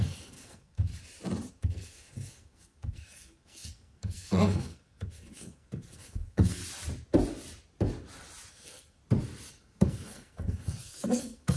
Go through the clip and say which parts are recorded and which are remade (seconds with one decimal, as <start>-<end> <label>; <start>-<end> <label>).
0.0-0.9 remade; 0.9-1.5 recorded; 1.5-6.6 remade; 6.6-8.5 recorded; 8.5-9.0 remade; 9.0-9.5 recorded; 9.5-11.6 remade